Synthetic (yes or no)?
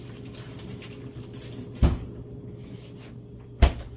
no